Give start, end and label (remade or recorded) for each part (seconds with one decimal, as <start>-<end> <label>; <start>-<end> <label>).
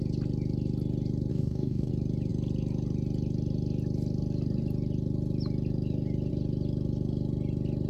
0.0-1.3 recorded; 1.3-1.9 remade; 1.9-7.9 recorded